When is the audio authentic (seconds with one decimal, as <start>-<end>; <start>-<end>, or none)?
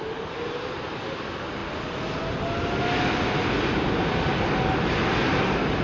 0.0-5.8